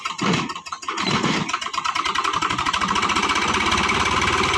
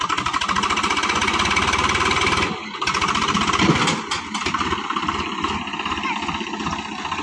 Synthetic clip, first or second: first